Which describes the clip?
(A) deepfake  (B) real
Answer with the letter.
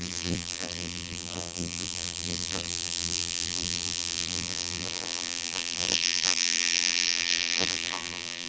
A